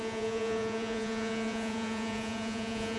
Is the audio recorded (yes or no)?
no